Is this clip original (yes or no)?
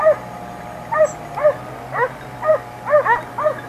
yes